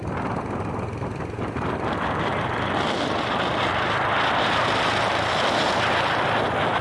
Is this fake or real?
real